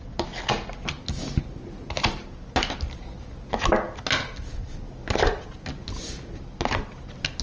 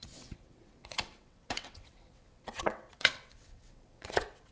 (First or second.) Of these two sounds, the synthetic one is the second